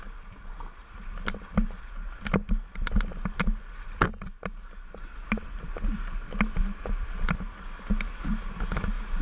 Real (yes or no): yes